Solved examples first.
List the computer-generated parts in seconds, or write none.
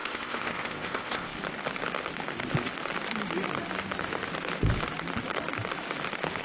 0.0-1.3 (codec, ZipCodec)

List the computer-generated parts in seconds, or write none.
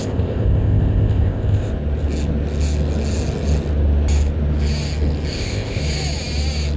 0.0-1.7 (codec, ZipCodec); 5.3-5.8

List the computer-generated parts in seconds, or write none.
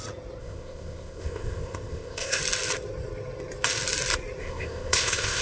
0.4-2.4 (codec, ZipCodec); 4.4-5.4